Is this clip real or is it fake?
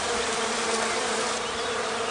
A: real